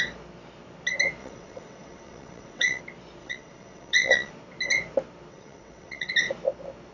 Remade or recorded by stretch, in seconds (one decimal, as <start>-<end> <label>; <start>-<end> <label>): 0.0-1.2 recorded; 1.2-2.8 remade; 2.8-3.2 recorded; 3.2-4.3 remade; 4.3-5.3 recorded; 5.3-6.1 remade; 6.1-6.9 recorded